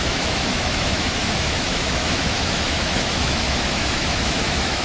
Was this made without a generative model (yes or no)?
no